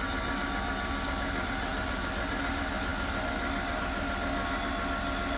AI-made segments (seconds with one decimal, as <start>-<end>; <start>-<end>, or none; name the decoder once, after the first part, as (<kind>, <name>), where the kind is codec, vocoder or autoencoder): none